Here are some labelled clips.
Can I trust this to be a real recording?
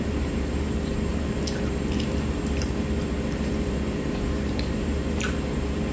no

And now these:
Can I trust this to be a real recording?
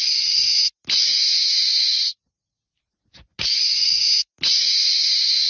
yes